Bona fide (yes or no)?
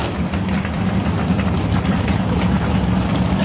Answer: yes